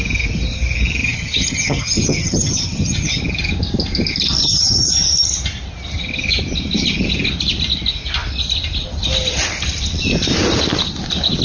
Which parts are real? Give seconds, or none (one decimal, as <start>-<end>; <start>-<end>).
0.0-1.0; 3.2-4.4; 4.9-11.4